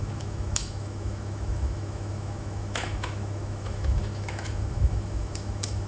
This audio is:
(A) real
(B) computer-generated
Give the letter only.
B